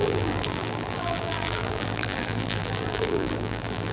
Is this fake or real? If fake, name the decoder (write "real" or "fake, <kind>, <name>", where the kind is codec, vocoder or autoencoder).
fake, vocoder, BigVGAN v2